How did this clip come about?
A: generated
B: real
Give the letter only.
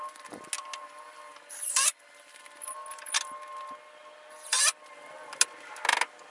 B